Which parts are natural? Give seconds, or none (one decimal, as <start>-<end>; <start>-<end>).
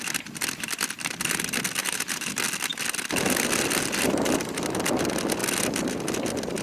0.0-1.8; 2.3-6.6